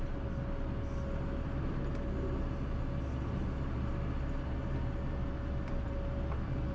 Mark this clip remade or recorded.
recorded